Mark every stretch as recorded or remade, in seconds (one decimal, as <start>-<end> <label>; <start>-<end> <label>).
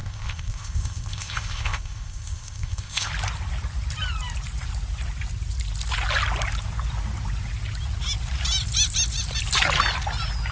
0.0-3.1 remade; 3.1-10.5 recorded